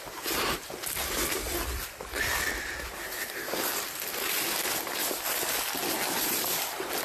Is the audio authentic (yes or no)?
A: yes